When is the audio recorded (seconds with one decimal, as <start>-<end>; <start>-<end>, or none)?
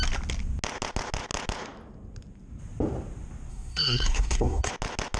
0.0-3.5; 4.7-5.2